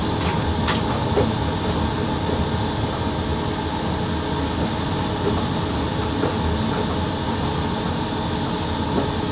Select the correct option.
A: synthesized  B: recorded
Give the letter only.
B